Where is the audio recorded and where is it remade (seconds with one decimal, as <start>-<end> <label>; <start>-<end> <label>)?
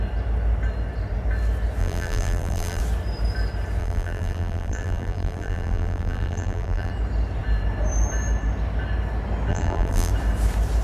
0.0-1.8 recorded; 1.8-2.8 remade; 2.8-3.8 recorded; 3.8-6.9 remade; 6.9-9.5 recorded; 9.5-10.1 remade; 10.1-10.8 recorded